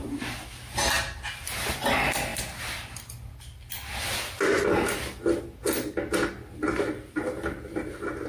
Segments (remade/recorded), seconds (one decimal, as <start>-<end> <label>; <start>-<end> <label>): 0.0-8.3 recorded